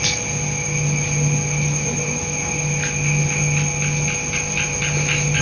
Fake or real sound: real